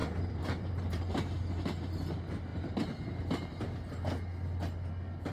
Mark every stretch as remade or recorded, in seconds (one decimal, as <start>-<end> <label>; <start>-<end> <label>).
0.0-1.0 remade; 1.0-5.3 recorded